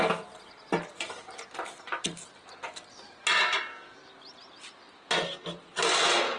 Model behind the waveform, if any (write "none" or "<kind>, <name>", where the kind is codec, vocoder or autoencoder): none